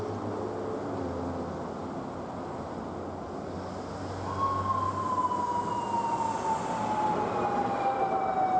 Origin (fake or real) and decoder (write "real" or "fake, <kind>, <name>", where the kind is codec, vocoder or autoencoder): real